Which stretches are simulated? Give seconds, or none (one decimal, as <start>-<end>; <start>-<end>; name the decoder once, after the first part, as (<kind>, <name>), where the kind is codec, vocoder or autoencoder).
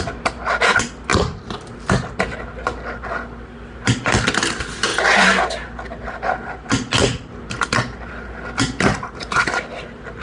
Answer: none